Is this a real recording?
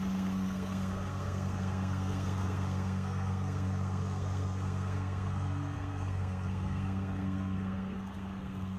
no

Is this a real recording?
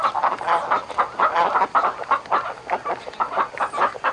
yes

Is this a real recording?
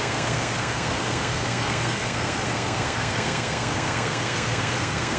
no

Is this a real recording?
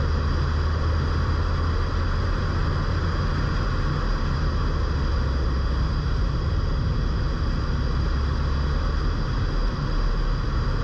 yes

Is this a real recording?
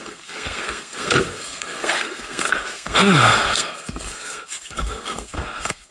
no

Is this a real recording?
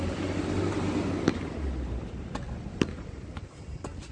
yes